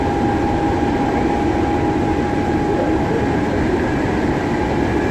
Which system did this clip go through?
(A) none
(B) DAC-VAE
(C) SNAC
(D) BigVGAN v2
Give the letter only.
A